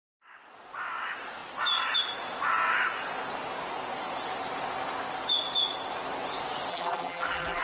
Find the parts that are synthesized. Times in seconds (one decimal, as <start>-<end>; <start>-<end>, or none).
6.7-7.6